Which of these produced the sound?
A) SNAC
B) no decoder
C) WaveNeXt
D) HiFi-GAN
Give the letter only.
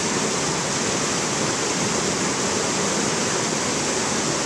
B